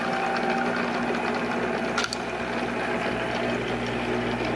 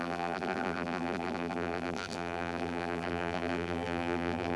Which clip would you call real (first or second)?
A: first